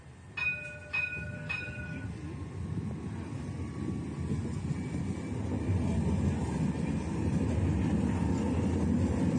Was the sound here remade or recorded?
recorded